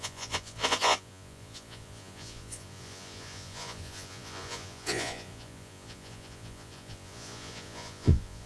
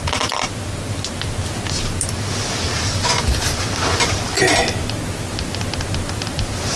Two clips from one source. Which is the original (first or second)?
second